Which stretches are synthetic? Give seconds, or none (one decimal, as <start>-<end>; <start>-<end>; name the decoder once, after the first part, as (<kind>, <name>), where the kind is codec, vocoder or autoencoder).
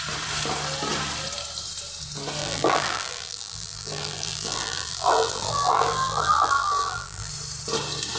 2.4-7.3 (vocoder, BigVGAN v2)